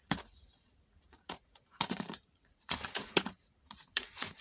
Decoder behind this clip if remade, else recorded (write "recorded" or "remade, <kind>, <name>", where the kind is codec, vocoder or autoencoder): remade, vocoder, Vocos